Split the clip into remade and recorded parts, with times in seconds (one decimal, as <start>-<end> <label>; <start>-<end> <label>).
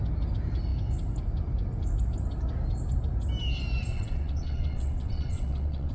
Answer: 0.0-3.9 recorded; 3.9-5.9 remade